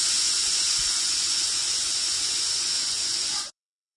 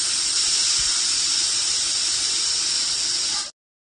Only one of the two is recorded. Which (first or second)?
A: second